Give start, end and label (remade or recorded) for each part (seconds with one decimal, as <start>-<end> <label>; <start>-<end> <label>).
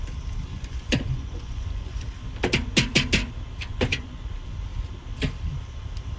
0.0-0.5 recorded; 0.5-2.0 remade; 2.0-3.7 recorded; 3.7-4.3 remade; 4.3-6.2 recorded